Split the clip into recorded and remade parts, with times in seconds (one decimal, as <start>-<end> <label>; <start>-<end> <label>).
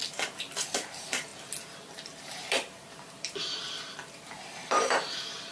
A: 0.0-5.5 remade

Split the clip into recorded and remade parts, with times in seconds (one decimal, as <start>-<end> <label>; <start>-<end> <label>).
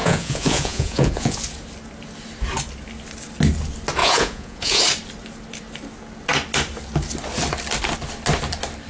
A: 0.0-1.4 remade; 1.4-4.0 recorded; 4.0-4.8 remade; 4.8-8.9 recorded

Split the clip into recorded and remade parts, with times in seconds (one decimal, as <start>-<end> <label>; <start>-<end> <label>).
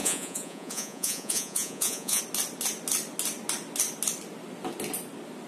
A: 0.0-2.2 remade; 2.2-5.5 recorded